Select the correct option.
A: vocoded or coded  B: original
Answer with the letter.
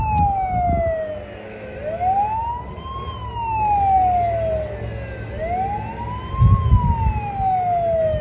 B